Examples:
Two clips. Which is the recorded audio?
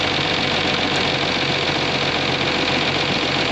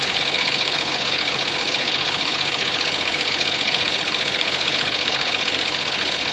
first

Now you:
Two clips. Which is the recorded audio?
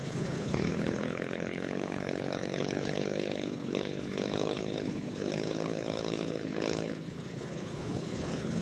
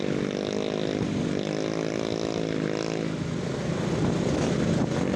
second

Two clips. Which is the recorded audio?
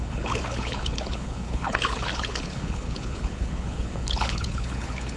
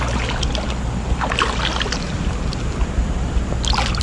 second